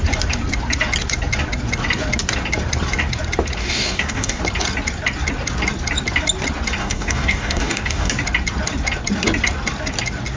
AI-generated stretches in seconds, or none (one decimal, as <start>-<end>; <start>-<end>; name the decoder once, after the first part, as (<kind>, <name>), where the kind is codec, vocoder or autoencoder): 3.6-4.4 (codec, DAC); 6.8-8.1